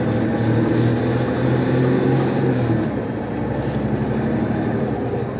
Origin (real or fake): real